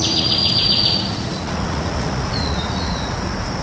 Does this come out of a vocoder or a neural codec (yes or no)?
yes